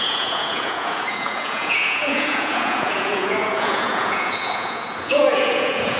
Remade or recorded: remade